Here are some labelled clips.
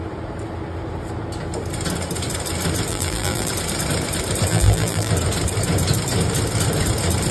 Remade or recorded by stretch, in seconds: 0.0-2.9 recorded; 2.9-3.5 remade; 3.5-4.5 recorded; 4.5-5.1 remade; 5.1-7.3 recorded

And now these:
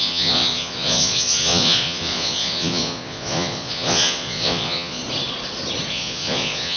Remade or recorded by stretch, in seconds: 0.0-5.0 remade; 5.0-5.9 recorded; 5.9-6.8 remade

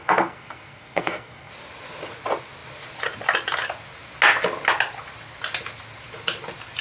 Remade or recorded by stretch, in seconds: 0.0-1.5 remade; 1.5-6.8 recorded

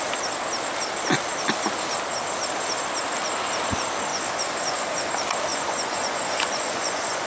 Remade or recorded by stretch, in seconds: 0.0-4.1 recorded; 4.1-5.1 remade; 5.1-5.5 recorded; 5.5-7.3 remade

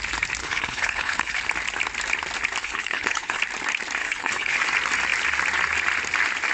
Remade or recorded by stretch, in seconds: 0.0-0.4 recorded; 0.4-1.4 remade; 1.4-2.6 recorded; 2.6-3.4 remade; 3.4-4.0 recorded; 4.0-4.6 remade; 4.6-6.5 recorded

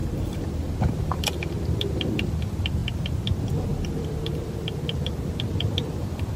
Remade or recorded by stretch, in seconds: 0.0-1.1 recorded; 1.1-2.8 remade; 2.8-5.3 recorded; 5.3-6.4 remade